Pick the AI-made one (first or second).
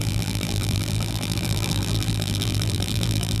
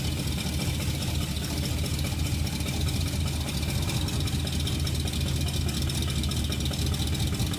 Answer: first